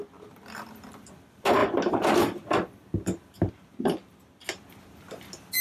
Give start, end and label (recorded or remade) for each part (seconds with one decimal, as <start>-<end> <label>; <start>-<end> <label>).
0.0-5.6 recorded